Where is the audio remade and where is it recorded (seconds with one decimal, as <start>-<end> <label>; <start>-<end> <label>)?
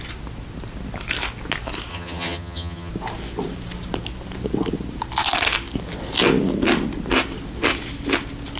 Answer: 0.0-1.9 recorded; 1.9-2.9 remade; 2.9-8.6 recorded